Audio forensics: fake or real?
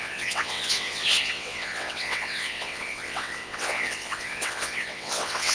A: fake